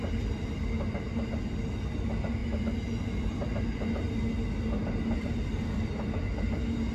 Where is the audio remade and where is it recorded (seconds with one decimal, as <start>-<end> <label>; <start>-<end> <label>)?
0.0-6.9 recorded